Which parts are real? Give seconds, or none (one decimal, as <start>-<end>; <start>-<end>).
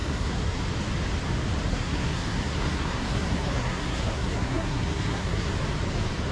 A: 0.6-1.7; 5.5-6.3